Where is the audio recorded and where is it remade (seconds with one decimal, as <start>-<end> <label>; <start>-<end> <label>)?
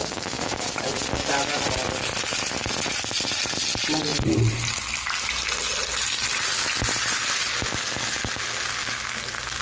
0.0-0.6 remade; 0.6-9.6 recorded